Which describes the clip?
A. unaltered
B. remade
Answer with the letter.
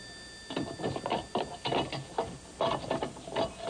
A